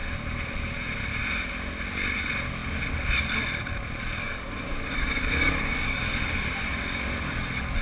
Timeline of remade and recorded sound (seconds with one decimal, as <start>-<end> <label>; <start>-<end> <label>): 0.0-4.2 recorded; 4.2-7.0 remade; 7.0-7.8 recorded